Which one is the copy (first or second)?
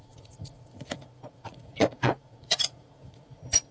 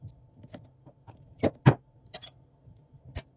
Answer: first